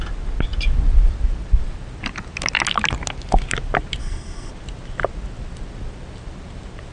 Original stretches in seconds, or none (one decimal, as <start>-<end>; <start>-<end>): 0.0-4.0; 4.5-6.9